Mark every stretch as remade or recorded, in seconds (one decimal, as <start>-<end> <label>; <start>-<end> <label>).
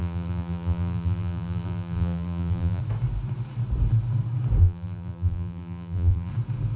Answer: 0.0-2.8 remade; 2.8-4.6 recorded; 4.6-6.3 remade; 6.3-6.8 recorded